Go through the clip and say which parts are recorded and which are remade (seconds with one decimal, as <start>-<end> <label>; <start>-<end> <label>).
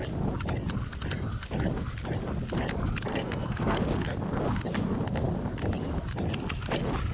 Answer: 0.0-3.1 recorded; 3.1-3.8 remade; 3.8-7.1 recorded